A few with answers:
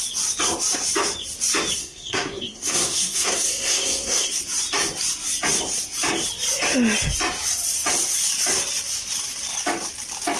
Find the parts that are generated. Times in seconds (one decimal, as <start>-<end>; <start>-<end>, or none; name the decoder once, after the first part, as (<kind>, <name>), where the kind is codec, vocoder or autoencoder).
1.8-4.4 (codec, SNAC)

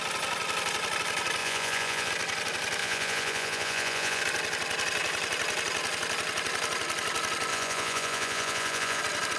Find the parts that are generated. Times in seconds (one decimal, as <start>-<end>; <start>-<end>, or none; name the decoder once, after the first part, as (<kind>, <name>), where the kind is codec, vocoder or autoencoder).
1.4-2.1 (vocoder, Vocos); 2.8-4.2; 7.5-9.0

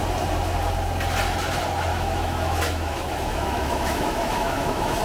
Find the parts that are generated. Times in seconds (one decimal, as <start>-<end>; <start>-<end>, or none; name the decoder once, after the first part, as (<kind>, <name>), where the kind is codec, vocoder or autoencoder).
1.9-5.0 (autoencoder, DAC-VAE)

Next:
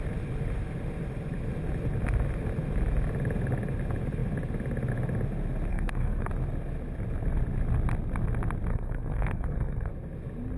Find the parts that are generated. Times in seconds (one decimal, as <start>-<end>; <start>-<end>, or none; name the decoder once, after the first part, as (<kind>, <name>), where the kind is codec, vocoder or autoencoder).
5.7-6.3 (codec, SNAC); 8.7-9.9

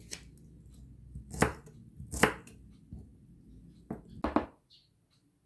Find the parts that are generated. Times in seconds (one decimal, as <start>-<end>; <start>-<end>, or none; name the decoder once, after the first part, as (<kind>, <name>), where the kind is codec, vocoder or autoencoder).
none

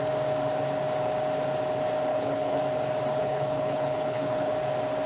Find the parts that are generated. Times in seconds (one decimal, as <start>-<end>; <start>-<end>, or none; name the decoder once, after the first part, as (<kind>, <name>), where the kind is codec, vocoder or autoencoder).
2.1-2.6 (codec, HILCodec); 3.2-4.5

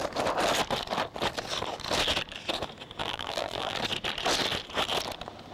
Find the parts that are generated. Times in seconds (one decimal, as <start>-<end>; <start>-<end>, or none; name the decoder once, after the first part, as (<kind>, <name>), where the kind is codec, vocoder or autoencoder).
3.0-3.8 (vocoder, BigVGAN v2)

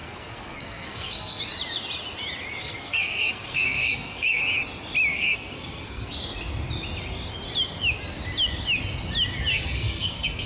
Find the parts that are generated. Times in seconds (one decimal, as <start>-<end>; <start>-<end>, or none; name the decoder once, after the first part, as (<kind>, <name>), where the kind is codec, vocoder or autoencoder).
0.0-1.4 (codec, SNAC); 2.6-4.4; 5.1-6.1; 9.5-10.5